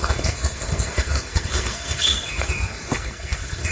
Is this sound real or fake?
fake